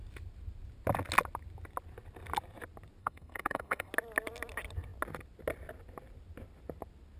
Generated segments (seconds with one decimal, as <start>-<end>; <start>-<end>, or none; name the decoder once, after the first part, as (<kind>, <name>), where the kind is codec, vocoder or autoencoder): 3.0-3.9 (codec, SNAC)